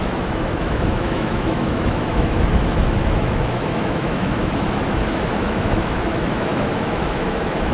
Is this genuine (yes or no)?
no